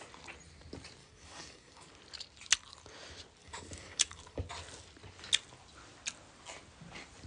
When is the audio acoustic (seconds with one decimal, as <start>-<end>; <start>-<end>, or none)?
0.0-1.0; 1.9-3.4; 4.4-7.3